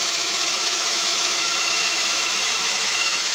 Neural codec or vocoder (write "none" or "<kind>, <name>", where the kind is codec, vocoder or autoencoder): autoencoder, DAC-VAE